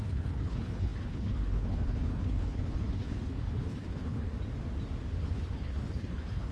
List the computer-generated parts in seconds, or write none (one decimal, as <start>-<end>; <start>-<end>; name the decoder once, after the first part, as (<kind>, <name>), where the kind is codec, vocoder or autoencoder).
0.0-4.3 (codec, HILCodec); 5.2-6.5